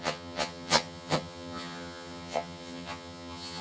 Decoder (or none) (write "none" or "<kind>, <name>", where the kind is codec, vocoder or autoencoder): vocoder, HiFi-GAN